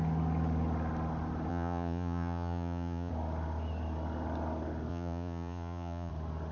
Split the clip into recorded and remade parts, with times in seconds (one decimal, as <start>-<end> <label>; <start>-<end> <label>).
0.0-1.5 recorded; 1.5-3.1 remade; 3.1-4.9 recorded; 4.9-6.1 remade; 6.1-6.5 recorded